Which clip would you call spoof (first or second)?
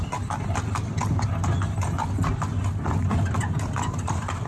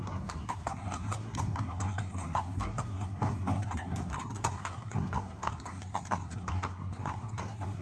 second